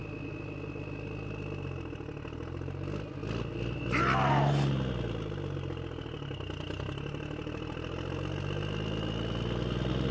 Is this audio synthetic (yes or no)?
no